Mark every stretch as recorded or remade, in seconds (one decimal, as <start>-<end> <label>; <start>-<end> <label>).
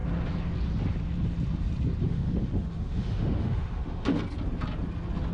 0.0-2.0 recorded; 2.0-4.2 remade; 4.2-5.3 recorded